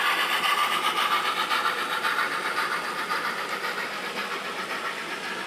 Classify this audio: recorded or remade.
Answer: recorded